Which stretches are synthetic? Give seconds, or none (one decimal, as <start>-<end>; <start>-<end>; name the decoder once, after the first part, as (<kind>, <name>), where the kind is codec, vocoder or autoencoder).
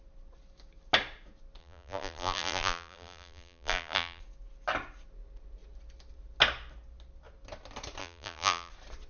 1.6-4.2 (vocoder, BigVGAN v2); 8.0-8.7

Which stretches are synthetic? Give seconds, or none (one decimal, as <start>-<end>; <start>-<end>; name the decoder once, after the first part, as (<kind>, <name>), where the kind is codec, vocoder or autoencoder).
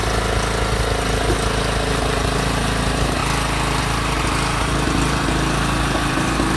1.9-3.2 (vocoder, BigVGAN v2); 3.8-6.6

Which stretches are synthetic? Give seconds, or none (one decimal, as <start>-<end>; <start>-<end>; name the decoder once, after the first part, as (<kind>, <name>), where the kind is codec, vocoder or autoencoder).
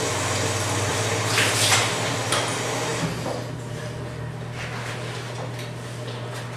0.9-2.1 (vocoder, BigVGAN v2)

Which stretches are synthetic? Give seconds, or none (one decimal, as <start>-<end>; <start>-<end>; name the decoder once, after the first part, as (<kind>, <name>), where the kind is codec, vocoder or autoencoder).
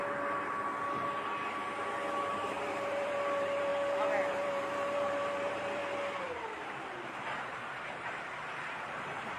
2.3-3.7 (vocoder, BigVGAN v2); 4.3-5.8; 7.2-9.4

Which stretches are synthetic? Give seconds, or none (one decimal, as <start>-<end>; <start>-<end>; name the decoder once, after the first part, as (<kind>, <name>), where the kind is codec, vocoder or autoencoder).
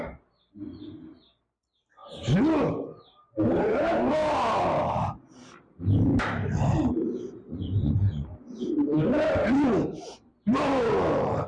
0.0-2.0 (vocoder, BigVGAN v2); 2.7-11.5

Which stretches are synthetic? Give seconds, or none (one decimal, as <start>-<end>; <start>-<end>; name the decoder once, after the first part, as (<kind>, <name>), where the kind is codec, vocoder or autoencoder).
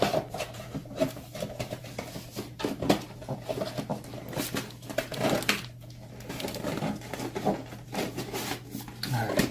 none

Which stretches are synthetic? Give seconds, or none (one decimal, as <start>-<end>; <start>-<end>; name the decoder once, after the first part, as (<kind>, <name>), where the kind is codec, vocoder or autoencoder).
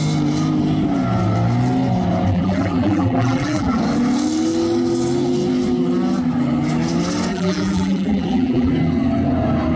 2.3-3.8 (vocoder, BigVGAN v2); 7.3-8.7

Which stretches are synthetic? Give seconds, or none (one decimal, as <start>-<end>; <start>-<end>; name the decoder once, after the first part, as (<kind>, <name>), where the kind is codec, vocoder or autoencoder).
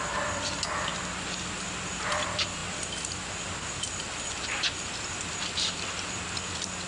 none